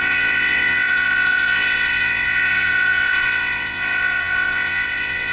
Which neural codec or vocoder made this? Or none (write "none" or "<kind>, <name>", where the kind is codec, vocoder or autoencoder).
vocoder, WaveNeXt